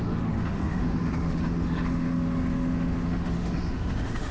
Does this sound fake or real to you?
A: fake